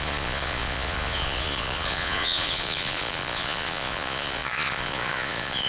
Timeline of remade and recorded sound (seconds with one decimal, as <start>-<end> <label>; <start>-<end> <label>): 0.0-5.7 remade